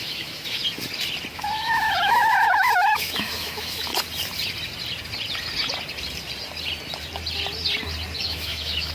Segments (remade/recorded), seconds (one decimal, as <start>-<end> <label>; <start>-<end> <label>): 0.0-0.6 remade; 0.6-1.3 recorded; 1.3-3.9 remade; 3.9-8.2 recorded; 8.2-8.9 remade

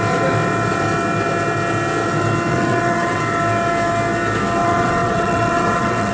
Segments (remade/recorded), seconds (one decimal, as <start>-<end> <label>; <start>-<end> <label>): 0.0-2.5 recorded; 2.5-3.2 remade; 3.2-4.6 recorded; 4.6-6.1 remade

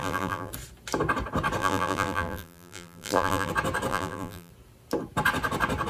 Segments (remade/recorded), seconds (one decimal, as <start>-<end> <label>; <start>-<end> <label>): 0.0-0.5 remade; 0.5-1.6 recorded; 1.6-3.5 remade; 3.5-3.9 recorded; 3.9-4.5 remade; 4.5-5.9 recorded